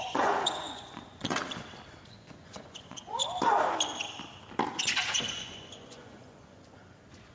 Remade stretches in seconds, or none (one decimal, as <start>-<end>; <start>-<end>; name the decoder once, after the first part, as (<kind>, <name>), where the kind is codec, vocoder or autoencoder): 0.0-1.4 (vocoder, Vocos); 2.1-3.2; 4.8-7.3